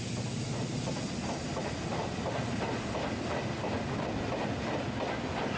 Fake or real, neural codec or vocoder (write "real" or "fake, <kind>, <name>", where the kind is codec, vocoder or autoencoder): real